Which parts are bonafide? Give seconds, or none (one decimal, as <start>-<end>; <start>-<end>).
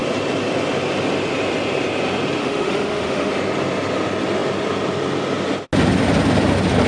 0.0-2.4; 3.3-6.9